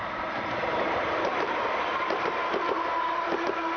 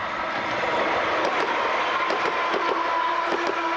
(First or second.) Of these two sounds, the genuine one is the second